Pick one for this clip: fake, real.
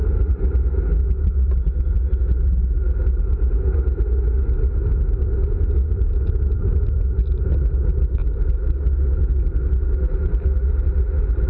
real